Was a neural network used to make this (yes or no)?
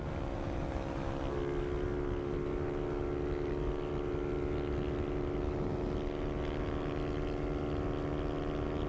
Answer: no